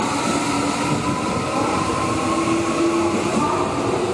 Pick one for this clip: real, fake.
real